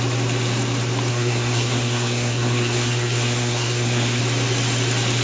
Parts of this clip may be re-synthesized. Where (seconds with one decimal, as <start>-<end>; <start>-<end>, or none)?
1.1-4.2